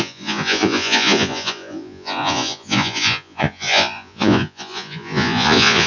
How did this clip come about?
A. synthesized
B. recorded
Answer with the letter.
A